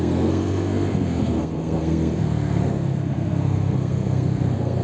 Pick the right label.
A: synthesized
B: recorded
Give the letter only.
A